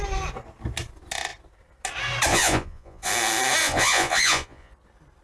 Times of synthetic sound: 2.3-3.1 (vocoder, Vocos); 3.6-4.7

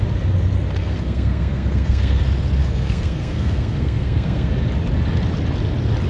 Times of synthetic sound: 0.8-2.2 (codec, SNAC); 2.6-4.5

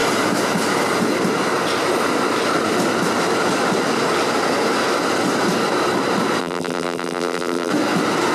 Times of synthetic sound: 6.4-7.7 (vocoder, BigVGAN v2)

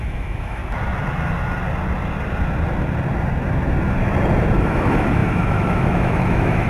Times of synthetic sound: 0.0-0.6 (autoencoder, DAC-VAE); 4.6-6.7

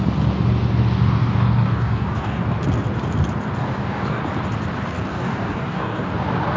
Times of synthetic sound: 1.2-2.4 (codec, DAC); 3.6-4.2; 5.1-6.1

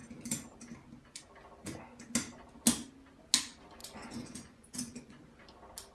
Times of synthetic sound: 3.8-5.2 (vocoder, Vocos)

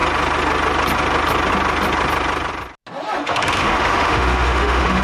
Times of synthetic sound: 3.2-5.0 (autoencoder, DAC-VAE)

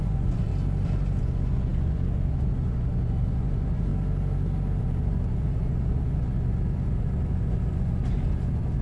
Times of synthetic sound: 0.0-0.5 (vocoder, Vocos); 1.2-3.9; 4.8-8.8